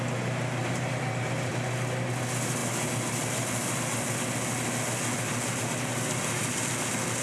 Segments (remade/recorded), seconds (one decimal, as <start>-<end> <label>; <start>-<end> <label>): 0.0-0.6 recorded; 0.6-1.5 remade; 1.5-7.2 recorded